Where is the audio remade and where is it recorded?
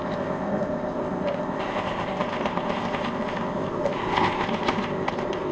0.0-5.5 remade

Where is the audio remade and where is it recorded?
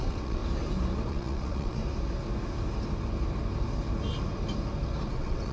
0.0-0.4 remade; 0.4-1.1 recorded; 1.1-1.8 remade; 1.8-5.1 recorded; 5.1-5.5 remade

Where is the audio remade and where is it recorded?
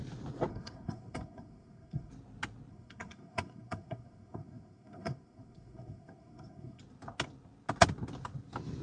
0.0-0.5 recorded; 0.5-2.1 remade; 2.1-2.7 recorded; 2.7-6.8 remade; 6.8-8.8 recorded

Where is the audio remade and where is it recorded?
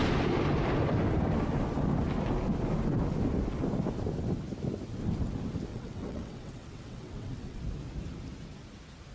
0.0-5.7 recorded; 5.7-7.6 remade; 7.6-9.1 recorded